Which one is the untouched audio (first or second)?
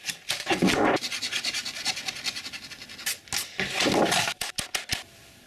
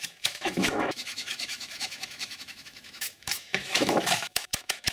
first